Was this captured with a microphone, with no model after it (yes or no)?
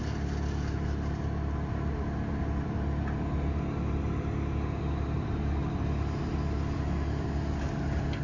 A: yes